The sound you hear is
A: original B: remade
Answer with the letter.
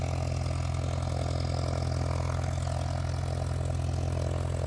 A